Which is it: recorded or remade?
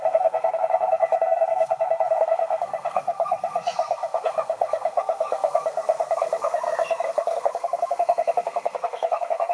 remade